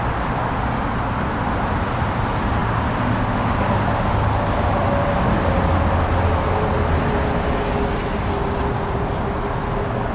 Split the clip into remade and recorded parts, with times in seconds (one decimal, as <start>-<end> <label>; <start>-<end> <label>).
0.0-10.1 recorded